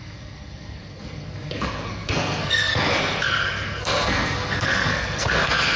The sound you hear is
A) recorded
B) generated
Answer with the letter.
B